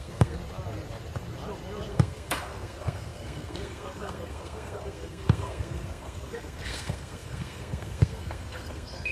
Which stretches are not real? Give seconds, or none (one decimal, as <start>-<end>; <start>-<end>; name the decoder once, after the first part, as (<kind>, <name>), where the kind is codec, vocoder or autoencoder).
0.0-0.4 (codec, SNAC); 1.9-9.1

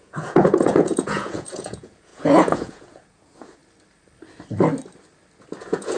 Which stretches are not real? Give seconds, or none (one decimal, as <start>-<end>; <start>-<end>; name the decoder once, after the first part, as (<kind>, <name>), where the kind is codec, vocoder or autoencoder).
0.0-3.6 (vocoder, Vocos); 5.6-6.0

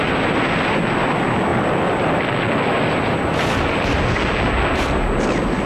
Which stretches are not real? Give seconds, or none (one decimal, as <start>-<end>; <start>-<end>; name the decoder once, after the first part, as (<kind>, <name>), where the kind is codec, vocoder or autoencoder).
1.5-4.0 (vocoder, BigVGAN v2)

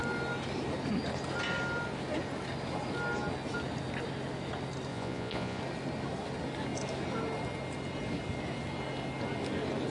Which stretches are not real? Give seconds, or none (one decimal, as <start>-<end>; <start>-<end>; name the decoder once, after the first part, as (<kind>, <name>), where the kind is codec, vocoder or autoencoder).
4.9-5.6 (vocoder, Vocos)